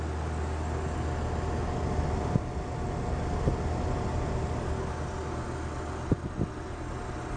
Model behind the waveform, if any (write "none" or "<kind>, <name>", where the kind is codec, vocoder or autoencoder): none